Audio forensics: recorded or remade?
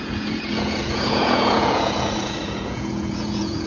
remade